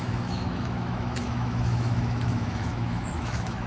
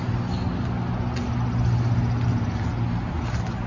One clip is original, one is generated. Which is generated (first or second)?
first